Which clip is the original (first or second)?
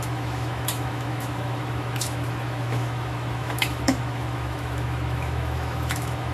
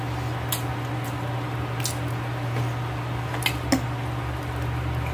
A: second